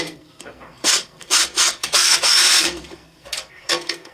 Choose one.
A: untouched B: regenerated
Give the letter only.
B